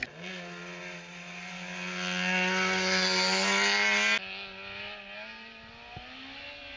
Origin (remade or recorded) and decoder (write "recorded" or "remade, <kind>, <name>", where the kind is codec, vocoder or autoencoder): recorded